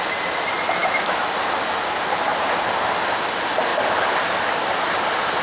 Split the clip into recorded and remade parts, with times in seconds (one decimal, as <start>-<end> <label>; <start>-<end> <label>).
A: 0.0-0.8 recorded; 0.8-1.3 remade; 1.3-5.4 recorded